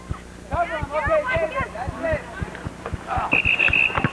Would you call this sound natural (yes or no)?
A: yes